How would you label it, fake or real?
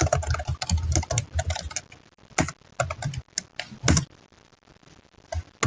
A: real